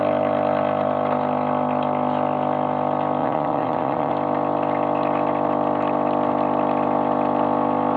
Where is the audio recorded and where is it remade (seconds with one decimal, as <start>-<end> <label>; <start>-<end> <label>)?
0.0-3.2 recorded; 3.2-4.1 remade; 4.1-8.0 recorded